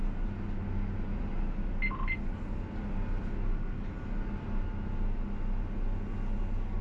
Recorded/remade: recorded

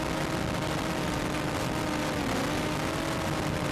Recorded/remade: recorded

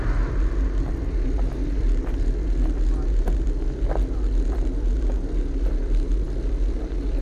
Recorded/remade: recorded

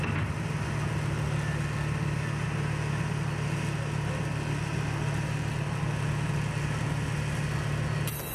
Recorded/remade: recorded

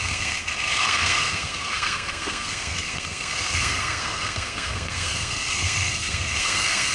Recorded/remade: remade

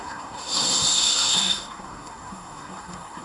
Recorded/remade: remade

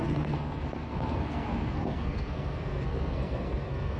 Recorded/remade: remade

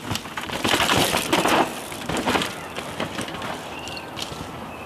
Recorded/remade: recorded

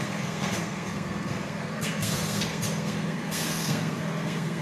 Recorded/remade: remade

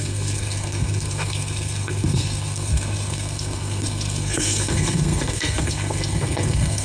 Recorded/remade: remade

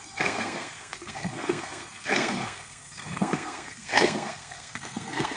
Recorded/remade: remade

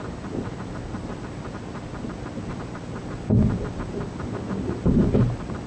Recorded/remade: recorded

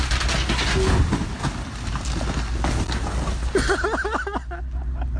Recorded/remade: recorded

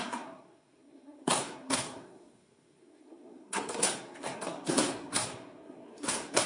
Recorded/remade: remade